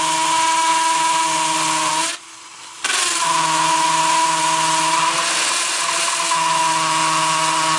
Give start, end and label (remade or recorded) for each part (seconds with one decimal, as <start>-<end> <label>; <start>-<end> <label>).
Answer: 0.0-7.8 recorded